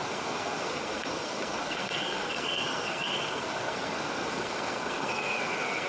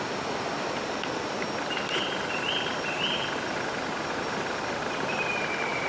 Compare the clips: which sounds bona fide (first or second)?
second